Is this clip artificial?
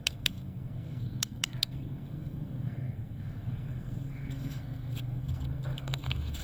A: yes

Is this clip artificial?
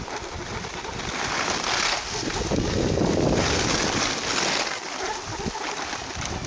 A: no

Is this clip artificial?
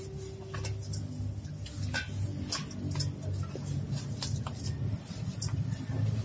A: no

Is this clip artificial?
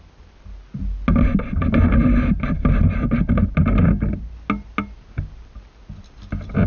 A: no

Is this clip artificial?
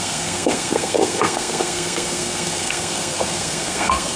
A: yes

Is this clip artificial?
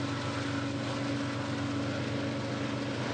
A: no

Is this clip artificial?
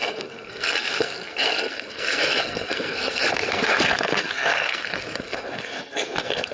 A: yes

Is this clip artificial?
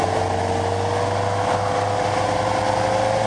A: no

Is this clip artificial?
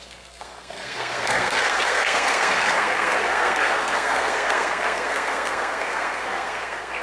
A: yes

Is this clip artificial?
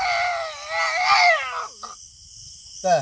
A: no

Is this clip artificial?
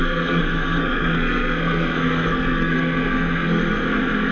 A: yes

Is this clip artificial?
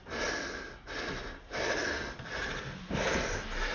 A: no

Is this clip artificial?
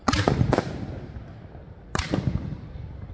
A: no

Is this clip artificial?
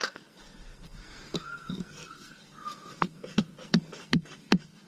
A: yes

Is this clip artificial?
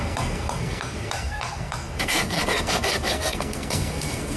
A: yes